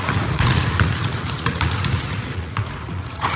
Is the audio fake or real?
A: fake